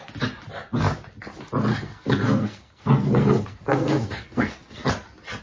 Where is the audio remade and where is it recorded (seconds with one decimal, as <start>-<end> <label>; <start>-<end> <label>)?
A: 0.0-1.7 recorded; 1.7-4.9 remade; 4.9-5.4 recorded